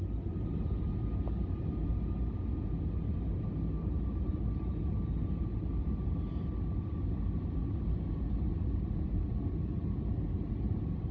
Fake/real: real